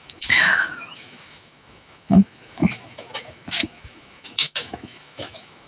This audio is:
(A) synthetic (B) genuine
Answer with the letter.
A